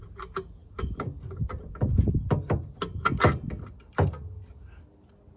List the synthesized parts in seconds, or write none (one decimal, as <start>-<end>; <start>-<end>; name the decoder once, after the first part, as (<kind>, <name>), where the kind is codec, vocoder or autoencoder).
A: none